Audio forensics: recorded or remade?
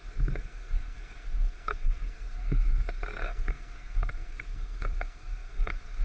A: remade